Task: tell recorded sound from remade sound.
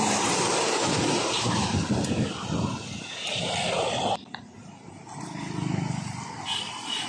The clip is recorded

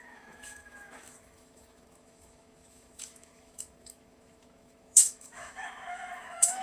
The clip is remade